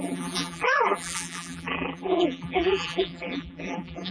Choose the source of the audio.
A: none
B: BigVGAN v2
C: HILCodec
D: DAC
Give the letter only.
B